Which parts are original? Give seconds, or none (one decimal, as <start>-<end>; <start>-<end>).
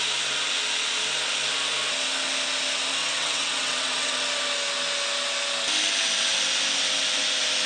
0.0-3.0; 4.2-7.7